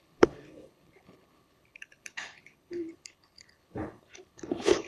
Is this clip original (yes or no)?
no